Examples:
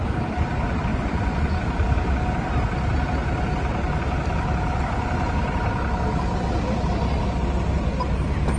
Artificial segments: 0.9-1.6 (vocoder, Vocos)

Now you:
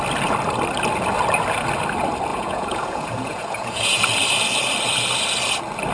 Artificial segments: 2.3-4.0 (vocoder, Vocos)

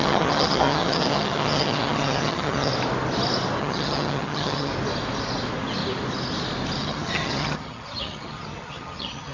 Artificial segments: 0.0-2.7 (vocoder, HiFi-GAN); 3.6-4.7; 6.8-9.3

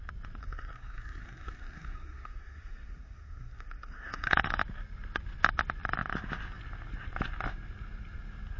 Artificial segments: 0.4-4.5 (codec, SNAC)

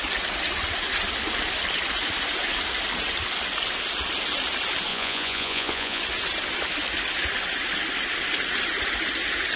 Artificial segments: 4.9-6.0 (vocoder, Vocos)

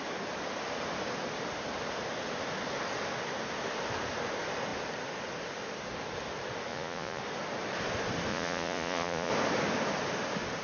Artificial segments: 6.7-7.2 (vocoder, Vocos); 8.3-9.3